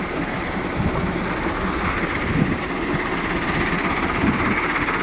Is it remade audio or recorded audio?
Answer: recorded